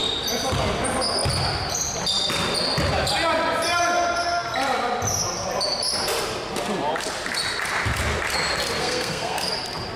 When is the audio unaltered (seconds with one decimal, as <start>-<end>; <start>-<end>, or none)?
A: 0.0-8.8; 9.5-10.0